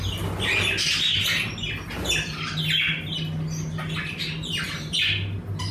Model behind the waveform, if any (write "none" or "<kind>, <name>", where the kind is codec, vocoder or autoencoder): none